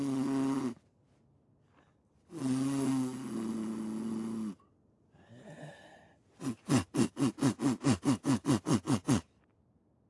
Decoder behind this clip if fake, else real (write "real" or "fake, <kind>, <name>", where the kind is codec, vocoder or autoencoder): real